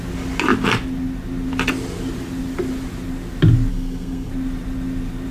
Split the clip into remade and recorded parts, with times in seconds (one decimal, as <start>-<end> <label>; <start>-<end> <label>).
0.0-3.7 recorded; 3.7-4.3 remade; 4.3-5.3 recorded